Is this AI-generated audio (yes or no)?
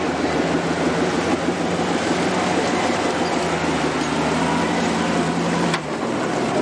yes